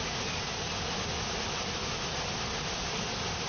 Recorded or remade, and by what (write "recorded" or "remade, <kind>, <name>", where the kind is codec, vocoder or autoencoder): recorded